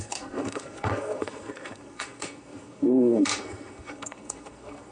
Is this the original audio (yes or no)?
no